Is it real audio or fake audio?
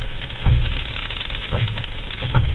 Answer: fake